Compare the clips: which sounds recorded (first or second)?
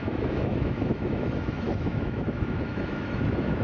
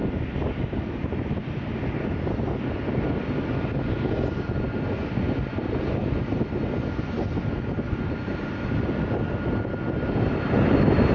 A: second